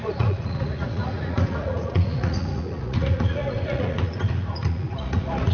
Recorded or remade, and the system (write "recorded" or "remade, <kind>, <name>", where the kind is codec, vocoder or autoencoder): remade, vocoder, Vocos